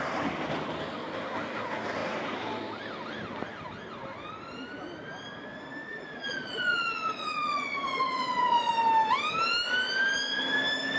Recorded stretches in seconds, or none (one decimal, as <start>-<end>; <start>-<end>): 0.0-5.9; 8.7-11.0